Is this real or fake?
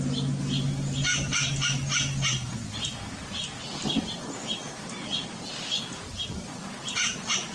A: real